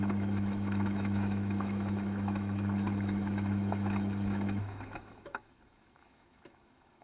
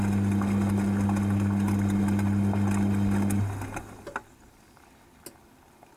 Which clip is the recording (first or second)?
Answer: second